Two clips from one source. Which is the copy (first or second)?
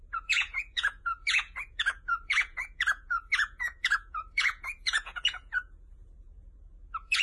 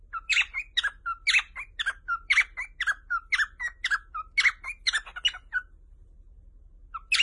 first